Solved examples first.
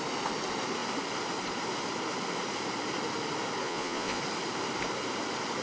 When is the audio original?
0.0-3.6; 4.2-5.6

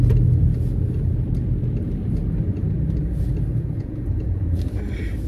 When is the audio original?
0.0-3.5; 4.4-5.3

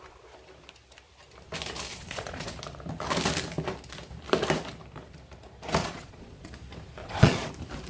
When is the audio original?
0.0-1.9; 2.5-5.8; 6.5-7.0; 7.5-7.9